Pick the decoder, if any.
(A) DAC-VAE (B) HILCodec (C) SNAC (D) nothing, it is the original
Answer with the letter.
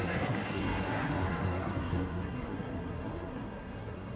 C